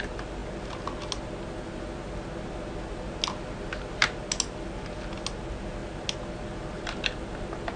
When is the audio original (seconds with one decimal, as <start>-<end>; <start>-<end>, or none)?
0.0-7.8